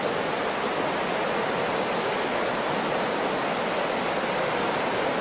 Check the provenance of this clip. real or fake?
real